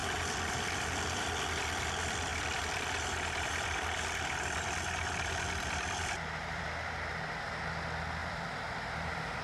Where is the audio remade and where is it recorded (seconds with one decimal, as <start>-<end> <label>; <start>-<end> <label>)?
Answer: 0.0-1.3 remade; 1.3-2.3 recorded; 2.3-7.6 remade; 7.6-8.2 recorded; 8.2-9.4 remade